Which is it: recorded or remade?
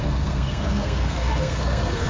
remade